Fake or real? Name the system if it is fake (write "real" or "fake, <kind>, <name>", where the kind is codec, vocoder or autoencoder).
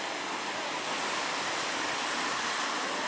real